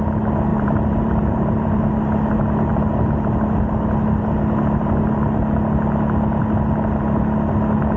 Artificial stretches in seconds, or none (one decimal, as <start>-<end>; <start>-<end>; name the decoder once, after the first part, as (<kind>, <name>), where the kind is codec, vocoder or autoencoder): 0.5-1.8 (vocoder, BigVGAN v2)

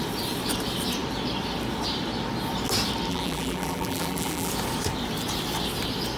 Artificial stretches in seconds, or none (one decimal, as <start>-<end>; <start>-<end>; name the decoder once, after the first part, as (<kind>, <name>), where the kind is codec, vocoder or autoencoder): 3.1-4.5 (vocoder, BigVGAN v2)